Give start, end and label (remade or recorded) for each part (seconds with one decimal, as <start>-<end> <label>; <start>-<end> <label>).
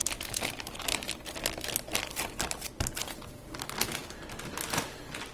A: 0.0-5.3 recorded